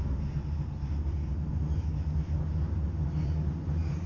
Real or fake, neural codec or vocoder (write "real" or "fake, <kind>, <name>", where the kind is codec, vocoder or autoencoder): real